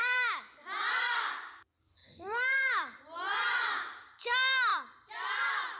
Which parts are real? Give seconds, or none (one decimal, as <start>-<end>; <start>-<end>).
1.2-2.0; 3.0-4.7